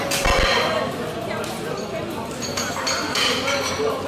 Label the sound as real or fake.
real